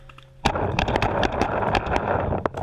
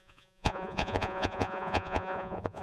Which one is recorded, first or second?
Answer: first